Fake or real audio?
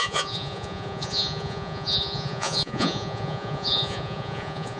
fake